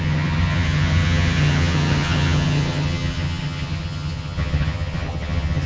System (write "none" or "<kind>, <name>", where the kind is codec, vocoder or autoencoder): vocoder, HiFi-GAN